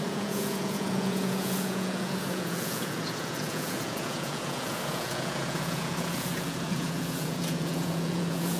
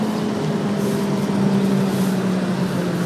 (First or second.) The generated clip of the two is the first